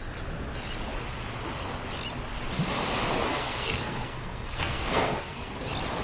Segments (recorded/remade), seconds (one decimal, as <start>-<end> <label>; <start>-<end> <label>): 0.0-3.3 recorded; 3.3-5.5 remade; 5.5-6.0 recorded